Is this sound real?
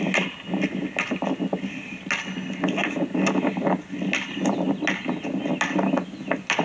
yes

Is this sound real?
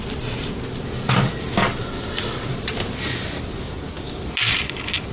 yes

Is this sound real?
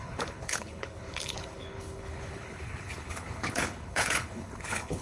no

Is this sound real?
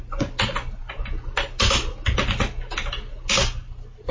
yes